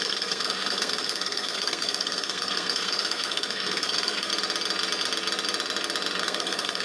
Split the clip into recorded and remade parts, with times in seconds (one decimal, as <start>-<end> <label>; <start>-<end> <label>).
0.0-4.3 remade; 4.3-6.2 recorded; 6.2-6.8 remade